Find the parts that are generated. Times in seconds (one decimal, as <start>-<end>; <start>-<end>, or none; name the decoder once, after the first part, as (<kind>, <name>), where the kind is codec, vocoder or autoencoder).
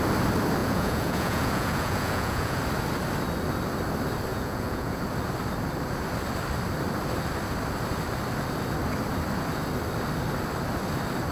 0.6-2.6 (vocoder, Vocos); 4.3-5.0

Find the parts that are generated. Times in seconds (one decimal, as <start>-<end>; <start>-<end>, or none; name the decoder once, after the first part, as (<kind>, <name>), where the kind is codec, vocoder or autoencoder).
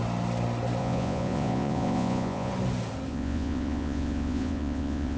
0.8-2.5 (vocoder, Vocos); 3.1-5.2